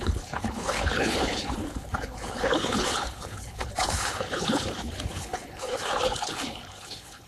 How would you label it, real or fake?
fake